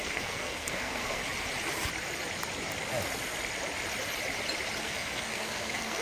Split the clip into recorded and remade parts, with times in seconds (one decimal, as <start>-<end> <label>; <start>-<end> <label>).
0.0-1.2 remade; 1.2-4.8 recorded; 4.8-6.0 remade